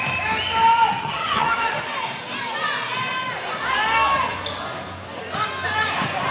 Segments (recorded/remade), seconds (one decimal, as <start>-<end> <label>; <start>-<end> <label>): 0.0-1.0 recorded; 1.0-1.8 remade; 1.8-6.3 recorded